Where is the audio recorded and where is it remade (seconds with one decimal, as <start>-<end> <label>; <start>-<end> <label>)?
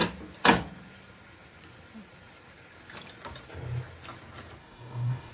0.0-4.6 recorded; 4.6-5.3 remade